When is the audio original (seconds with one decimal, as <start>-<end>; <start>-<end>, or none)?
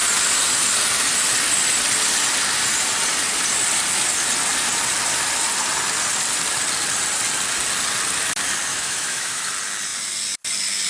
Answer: 0.0-8.7; 9.5-10.9